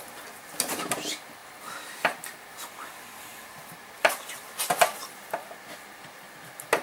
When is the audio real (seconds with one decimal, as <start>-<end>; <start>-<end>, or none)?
0.0-1.4; 5.5-6.8